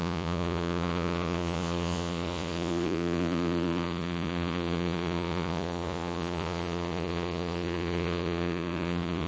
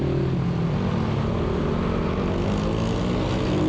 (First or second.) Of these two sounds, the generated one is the first